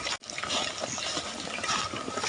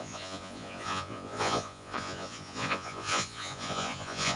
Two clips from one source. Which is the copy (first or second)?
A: second